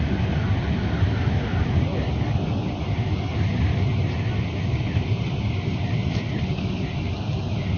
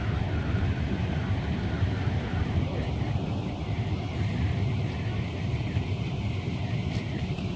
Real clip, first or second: first